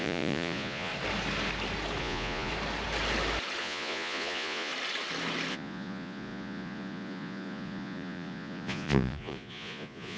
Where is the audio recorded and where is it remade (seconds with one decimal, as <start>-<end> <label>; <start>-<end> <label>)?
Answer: 0.0-0.9 remade; 0.9-2.0 recorded; 2.0-2.5 remade; 2.5-3.6 recorded; 3.6-4.7 remade; 4.7-5.5 recorded; 5.5-10.2 remade